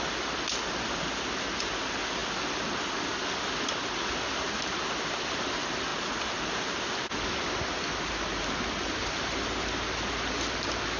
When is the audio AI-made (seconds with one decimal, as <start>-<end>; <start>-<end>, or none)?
none